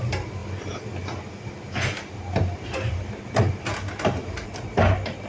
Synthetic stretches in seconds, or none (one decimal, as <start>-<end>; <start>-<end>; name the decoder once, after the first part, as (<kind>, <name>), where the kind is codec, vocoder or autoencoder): none